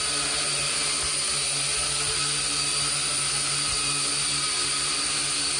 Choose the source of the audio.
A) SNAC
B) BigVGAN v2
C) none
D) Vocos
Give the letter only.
C